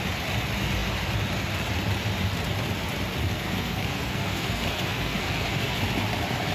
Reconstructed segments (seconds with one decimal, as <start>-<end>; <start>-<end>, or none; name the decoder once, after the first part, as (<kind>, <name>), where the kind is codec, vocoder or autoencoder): 3.2-5.8 (codec, SNAC)